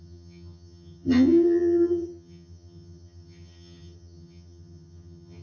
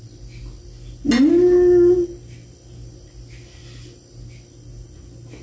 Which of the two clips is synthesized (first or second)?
first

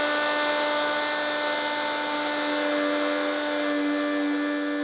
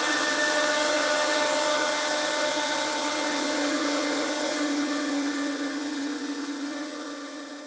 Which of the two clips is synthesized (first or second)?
second